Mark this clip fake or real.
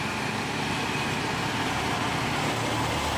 real